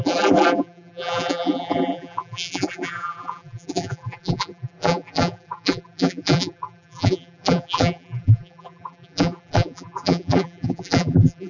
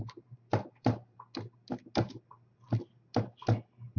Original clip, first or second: second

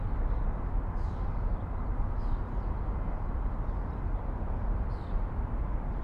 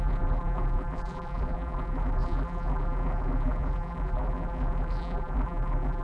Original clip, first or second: first